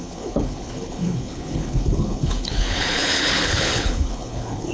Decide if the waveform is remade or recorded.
remade